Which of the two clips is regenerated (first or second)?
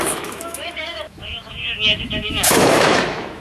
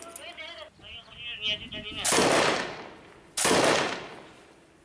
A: first